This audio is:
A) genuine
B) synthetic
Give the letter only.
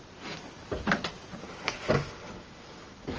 A